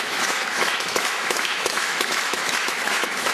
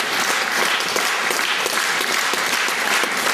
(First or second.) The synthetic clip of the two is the first